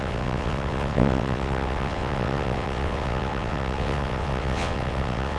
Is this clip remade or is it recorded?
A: remade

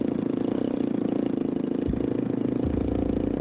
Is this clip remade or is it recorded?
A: recorded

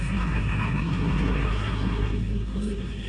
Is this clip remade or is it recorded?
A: remade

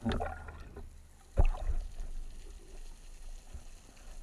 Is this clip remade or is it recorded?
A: recorded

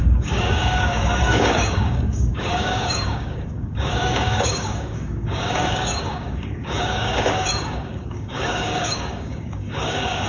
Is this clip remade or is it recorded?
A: remade